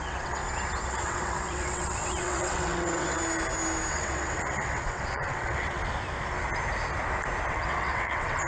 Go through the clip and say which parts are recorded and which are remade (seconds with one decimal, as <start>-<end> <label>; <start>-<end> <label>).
0.0-0.4 remade; 0.4-0.9 recorded; 0.9-3.2 remade; 3.2-3.9 recorded; 3.9-5.8 remade; 5.8-7.5 recorded; 7.5-8.5 remade